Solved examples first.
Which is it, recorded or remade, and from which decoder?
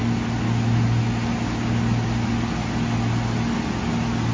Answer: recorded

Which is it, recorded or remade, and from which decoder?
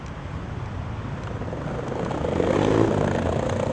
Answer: recorded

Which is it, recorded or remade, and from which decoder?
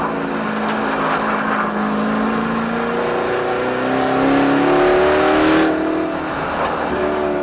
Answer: recorded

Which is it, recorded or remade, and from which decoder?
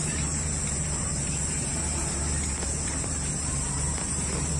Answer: remade, vocoder, BigVGAN v2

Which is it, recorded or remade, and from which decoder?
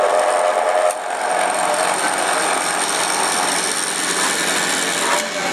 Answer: recorded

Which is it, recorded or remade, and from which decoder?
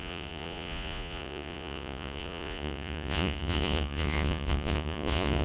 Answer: remade, vocoder, Vocos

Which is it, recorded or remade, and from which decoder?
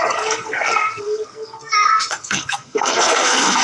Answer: remade, codec, SNAC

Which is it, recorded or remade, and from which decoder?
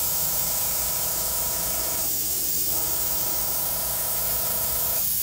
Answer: remade, autoencoder, DAC-VAE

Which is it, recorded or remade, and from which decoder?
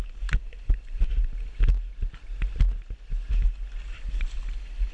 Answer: recorded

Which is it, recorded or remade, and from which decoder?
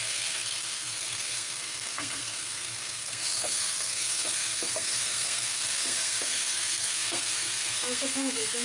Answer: remade, codec, SNAC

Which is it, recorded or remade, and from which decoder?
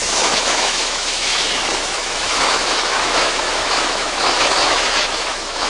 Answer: remade, autoencoder, DAC-VAE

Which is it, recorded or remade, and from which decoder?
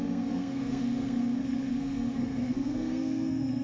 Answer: remade, codec, SNAC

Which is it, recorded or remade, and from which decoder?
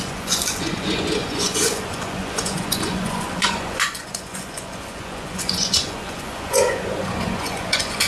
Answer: remade, vocoder, Vocos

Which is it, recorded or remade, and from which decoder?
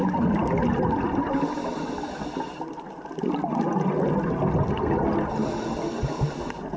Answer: recorded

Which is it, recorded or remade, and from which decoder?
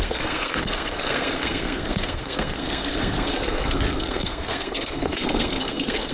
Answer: remade, codec, SNAC